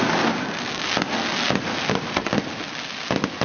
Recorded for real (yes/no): yes